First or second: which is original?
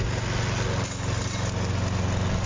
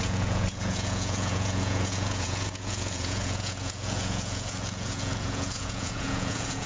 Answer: first